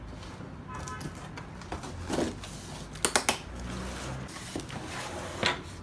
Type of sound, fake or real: real